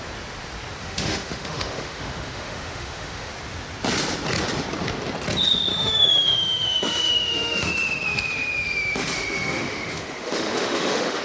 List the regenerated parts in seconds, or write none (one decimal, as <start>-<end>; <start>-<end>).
0.8-3.3; 5.7-11.2